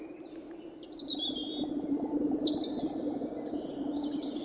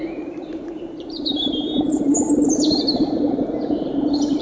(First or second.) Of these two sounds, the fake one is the second